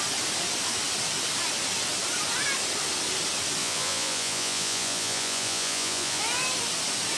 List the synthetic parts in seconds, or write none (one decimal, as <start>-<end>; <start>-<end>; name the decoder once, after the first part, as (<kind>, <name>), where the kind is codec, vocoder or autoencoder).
3.6-6.2 (vocoder, Vocos)